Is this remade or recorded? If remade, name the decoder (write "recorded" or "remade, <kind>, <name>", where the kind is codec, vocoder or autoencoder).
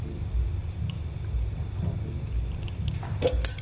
remade, vocoder, BigVGAN v2